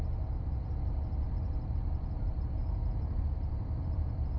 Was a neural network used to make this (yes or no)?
yes